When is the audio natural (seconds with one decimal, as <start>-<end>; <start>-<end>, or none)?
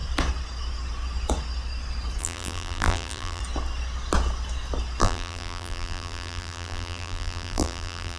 0.0-2.2; 3.4-5.0